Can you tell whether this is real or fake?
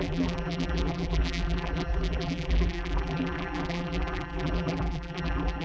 fake